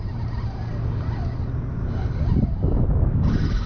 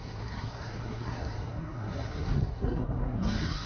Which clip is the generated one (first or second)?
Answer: second